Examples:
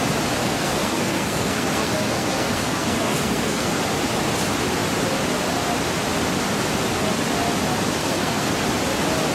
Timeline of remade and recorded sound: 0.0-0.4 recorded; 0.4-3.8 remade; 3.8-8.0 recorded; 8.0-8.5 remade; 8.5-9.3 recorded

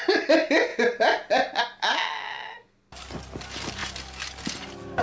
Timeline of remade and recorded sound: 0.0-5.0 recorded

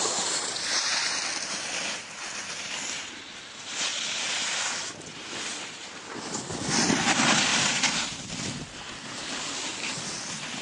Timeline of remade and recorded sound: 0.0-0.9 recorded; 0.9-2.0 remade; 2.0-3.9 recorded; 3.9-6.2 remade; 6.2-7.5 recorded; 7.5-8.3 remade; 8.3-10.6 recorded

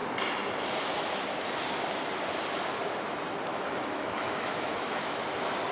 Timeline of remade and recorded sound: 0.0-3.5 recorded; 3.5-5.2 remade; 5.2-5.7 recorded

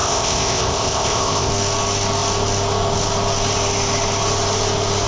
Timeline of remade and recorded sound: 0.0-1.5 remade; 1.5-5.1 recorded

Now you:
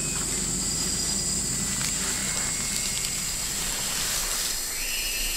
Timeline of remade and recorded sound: 0.0-5.4 recorded

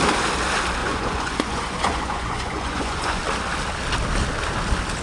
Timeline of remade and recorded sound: 0.0-0.8 recorded; 0.8-3.2 remade; 3.2-5.0 recorded

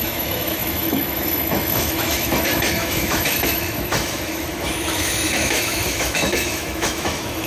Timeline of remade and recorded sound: 0.0-7.5 remade